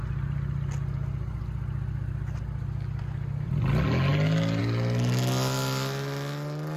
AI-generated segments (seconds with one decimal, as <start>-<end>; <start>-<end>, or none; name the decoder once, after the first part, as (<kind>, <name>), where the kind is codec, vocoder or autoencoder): none